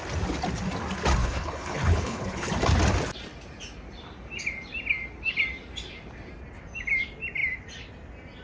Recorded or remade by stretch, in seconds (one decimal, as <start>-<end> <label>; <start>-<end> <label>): 0.0-1.2 recorded; 1.2-2.5 remade; 2.5-8.4 recorded